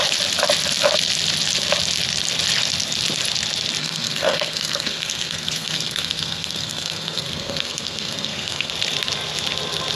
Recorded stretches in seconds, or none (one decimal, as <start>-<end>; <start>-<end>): 0.0-3.8; 8.7-10.0